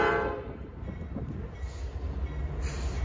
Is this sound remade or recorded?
recorded